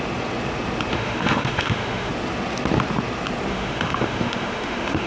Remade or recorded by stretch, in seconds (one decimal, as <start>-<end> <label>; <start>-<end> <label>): 0.0-0.9 recorded; 0.9-2.1 remade; 2.1-3.5 recorded; 3.5-5.1 remade